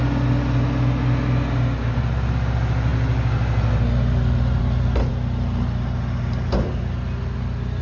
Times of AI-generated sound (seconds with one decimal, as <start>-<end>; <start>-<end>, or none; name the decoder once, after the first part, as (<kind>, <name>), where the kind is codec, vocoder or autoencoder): none